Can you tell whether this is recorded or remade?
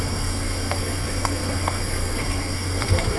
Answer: remade